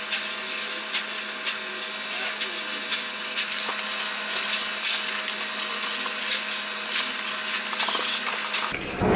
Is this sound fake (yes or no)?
no